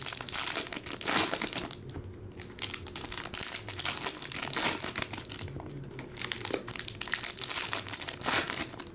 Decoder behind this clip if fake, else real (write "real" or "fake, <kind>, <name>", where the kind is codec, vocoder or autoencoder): real